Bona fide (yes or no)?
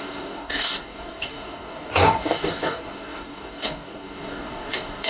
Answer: no